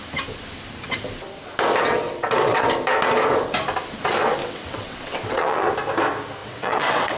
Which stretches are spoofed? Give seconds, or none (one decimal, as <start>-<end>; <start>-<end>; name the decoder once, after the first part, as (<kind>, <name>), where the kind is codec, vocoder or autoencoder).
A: 1.9-2.7 (vocoder, WaveNeXt); 4.4-5.7; 6.4-7.2